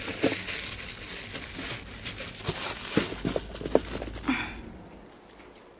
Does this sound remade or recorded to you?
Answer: recorded